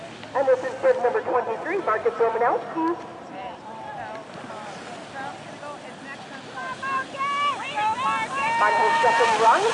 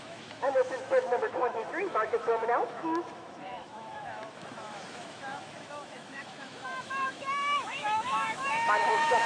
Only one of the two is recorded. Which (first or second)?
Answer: first